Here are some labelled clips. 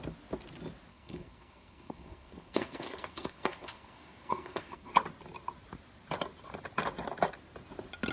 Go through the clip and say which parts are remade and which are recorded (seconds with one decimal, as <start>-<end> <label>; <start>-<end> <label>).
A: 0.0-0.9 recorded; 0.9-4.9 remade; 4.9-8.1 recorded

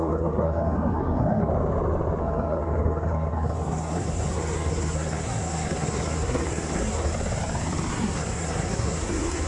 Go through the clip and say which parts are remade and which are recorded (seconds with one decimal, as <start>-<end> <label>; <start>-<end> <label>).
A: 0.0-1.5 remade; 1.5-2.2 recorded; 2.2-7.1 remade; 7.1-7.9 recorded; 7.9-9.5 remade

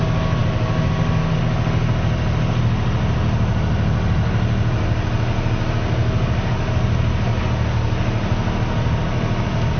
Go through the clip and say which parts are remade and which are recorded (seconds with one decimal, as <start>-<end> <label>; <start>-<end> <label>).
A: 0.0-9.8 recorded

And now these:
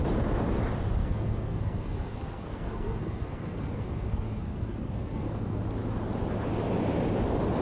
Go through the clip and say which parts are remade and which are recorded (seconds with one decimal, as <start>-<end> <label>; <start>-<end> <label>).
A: 0.0-1.0 recorded; 1.0-5.6 remade; 5.6-7.6 recorded

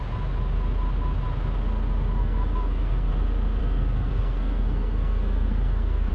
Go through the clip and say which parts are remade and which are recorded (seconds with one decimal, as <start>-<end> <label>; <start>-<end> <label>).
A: 0.0-2.2 recorded; 2.2-3.1 remade; 3.1-3.6 recorded; 3.6-6.1 remade

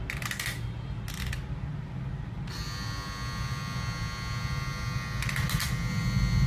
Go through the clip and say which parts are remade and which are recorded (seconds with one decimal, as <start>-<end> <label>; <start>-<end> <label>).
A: 0.0-6.5 recorded